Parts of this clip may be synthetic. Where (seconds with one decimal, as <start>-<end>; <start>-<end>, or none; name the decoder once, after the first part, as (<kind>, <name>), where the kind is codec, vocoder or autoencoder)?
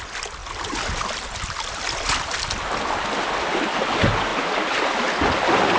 none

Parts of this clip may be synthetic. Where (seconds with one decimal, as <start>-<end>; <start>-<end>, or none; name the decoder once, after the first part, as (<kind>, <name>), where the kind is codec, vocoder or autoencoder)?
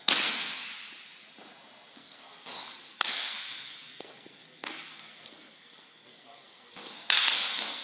0.0-0.6 (codec, SNAC); 1.9-7.8